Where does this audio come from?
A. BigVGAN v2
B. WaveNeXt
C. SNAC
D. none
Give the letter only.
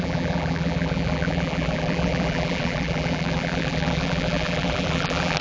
A